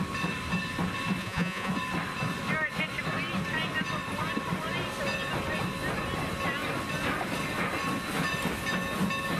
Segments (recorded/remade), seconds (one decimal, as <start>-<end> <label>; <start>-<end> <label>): 0.0-1.2 recorded; 1.2-1.7 remade; 1.7-9.4 recorded